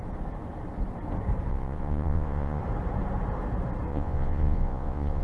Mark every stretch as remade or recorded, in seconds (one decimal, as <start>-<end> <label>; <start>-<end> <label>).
0.0-1.5 recorded; 1.5-2.6 remade; 2.6-3.9 recorded; 3.9-5.2 remade

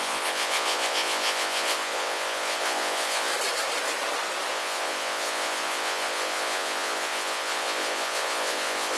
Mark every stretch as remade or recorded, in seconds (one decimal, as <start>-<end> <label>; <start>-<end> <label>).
0.0-3.3 remade; 3.3-4.5 recorded; 4.5-9.0 remade

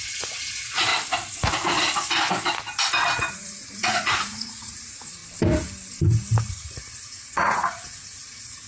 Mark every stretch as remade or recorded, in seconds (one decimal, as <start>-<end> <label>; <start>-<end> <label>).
0.0-0.9 remade; 0.9-3.3 recorded; 3.3-5.2 remade; 5.2-6.5 recorded; 6.5-8.7 remade

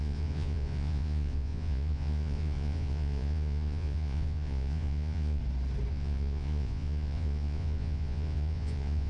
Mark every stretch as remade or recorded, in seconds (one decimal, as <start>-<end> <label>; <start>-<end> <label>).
0.0-5.4 remade; 5.4-5.9 recorded; 5.9-9.1 remade

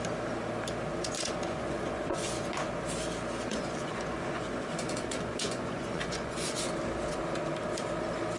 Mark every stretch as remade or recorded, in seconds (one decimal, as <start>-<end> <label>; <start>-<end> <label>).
0.0-0.9 recorded; 0.9-2.7 remade; 2.7-3.5 recorded; 3.5-6.6 remade; 6.6-8.4 recorded